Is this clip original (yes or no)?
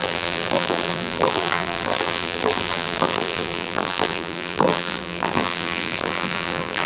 no